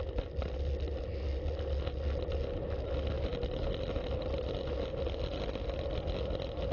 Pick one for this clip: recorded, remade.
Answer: recorded